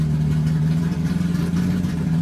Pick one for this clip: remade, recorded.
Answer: remade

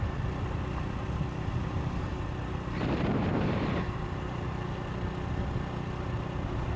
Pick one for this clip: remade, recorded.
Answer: recorded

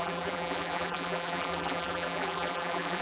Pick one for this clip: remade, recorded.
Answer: remade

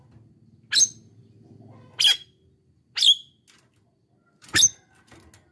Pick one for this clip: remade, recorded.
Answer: recorded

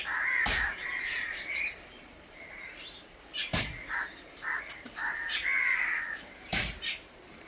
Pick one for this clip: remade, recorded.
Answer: remade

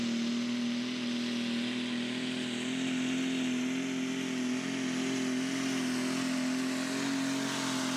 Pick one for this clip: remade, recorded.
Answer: recorded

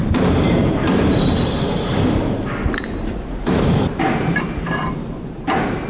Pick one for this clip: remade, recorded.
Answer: remade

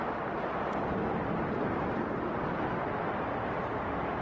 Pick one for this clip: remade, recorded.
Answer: recorded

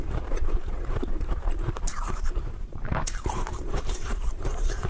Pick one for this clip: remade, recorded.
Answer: remade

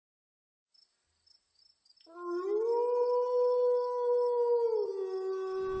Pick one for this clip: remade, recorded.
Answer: recorded